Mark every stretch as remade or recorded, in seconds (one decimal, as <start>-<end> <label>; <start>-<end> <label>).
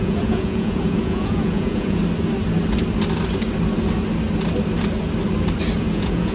0.0-2.0 remade; 2.0-5.8 recorded; 5.8-6.3 remade